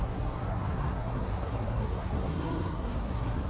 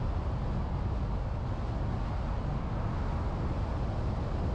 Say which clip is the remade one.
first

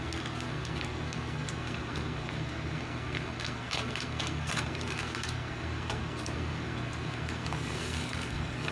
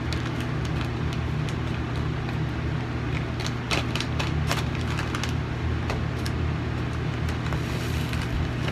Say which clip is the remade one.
first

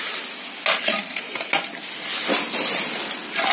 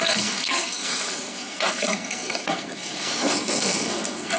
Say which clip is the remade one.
second